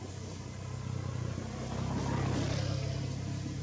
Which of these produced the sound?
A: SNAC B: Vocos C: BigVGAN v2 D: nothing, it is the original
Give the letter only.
D